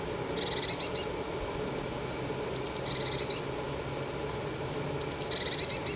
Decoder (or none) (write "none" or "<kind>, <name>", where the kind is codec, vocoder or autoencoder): none